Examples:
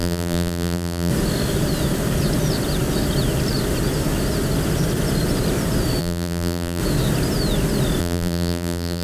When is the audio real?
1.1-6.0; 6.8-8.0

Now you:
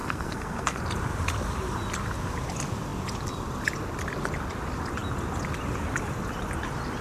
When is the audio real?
0.8-7.0

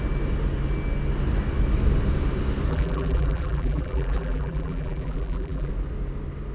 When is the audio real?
0.0-2.7; 5.7-6.5

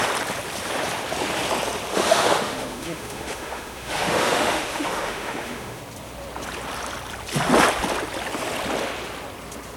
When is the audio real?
0.0-1.9; 5.8-9.8

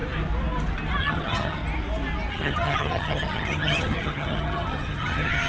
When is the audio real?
0.0-1.0; 1.6-2.3